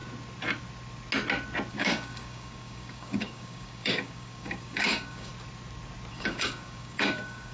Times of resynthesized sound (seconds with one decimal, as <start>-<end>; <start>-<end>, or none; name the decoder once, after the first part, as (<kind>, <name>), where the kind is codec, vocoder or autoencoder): 1.7-5.3 (codec, DAC); 6.1-7.5